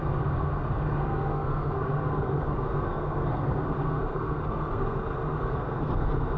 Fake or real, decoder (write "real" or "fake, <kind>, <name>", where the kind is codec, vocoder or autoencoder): fake, codec, SNAC